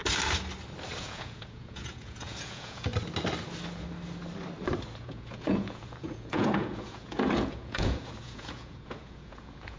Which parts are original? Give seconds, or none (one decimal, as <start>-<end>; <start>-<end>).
0.0-1.0; 2.9-4.9